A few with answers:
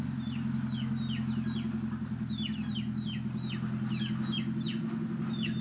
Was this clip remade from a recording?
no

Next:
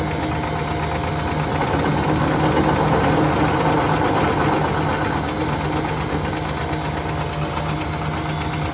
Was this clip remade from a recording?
no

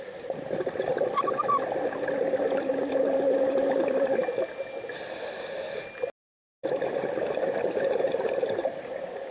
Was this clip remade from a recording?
no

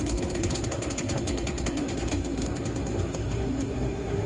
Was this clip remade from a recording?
yes